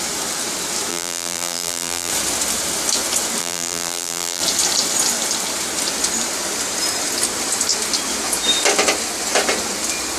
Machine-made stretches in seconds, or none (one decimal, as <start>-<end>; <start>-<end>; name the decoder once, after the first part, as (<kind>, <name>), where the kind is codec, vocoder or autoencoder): 0.9-2.1 (vocoder, BigVGAN v2); 3.4-4.4